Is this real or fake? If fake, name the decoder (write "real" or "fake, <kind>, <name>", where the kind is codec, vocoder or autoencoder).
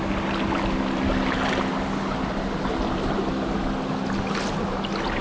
real